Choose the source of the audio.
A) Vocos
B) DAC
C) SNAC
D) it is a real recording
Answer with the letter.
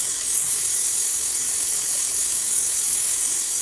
B